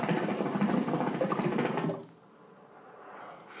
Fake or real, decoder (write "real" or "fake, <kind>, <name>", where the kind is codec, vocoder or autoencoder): real